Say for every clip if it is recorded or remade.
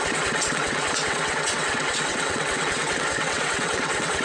remade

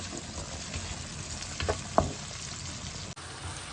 recorded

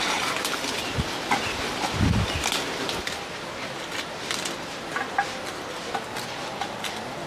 recorded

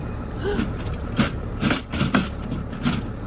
remade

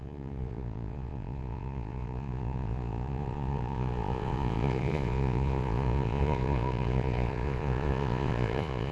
remade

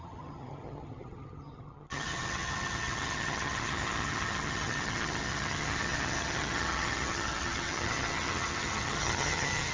remade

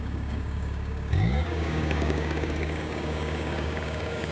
remade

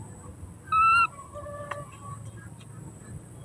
recorded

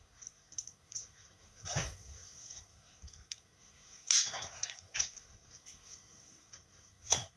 remade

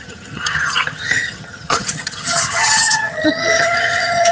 remade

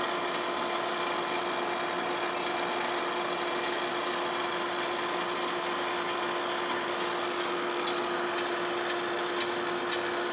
recorded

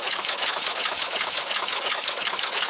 remade